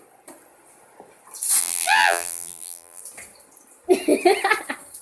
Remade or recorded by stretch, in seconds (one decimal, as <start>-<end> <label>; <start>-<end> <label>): 0.0-1.6 recorded; 1.6-3.0 remade; 3.0-5.0 recorded